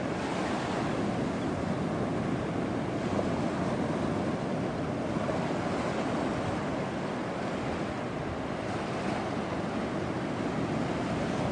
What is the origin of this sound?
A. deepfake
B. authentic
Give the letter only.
B